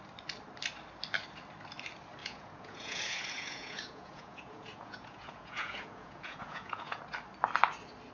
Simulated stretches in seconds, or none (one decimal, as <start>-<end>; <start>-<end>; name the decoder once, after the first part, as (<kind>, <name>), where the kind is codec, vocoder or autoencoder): 2.2-7.0 (vocoder, Vocos)